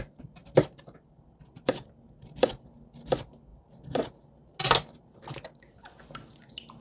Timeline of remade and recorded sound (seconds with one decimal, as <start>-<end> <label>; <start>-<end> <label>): 0.0-6.8 recorded